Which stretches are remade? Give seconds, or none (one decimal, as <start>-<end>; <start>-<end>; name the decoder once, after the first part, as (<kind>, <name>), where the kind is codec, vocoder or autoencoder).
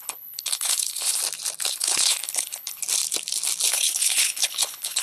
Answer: 0.0-1.2 (codec, HILCodec); 1.7-2.8; 3.7-5.0